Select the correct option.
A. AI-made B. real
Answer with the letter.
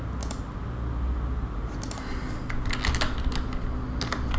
B